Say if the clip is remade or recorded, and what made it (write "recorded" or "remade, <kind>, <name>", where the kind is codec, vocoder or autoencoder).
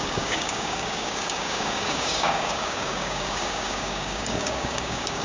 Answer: remade, codec, DAC